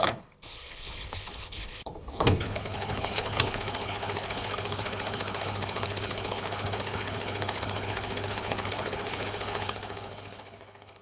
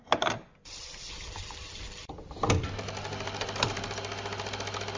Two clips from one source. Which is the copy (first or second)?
first